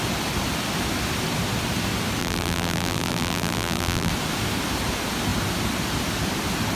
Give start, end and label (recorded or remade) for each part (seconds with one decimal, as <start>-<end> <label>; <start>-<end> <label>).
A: 0.0-2.2 recorded; 2.2-4.1 remade; 4.1-6.8 recorded